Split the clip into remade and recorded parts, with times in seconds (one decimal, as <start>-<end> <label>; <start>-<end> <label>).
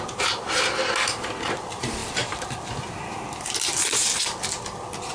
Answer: 0.0-5.1 recorded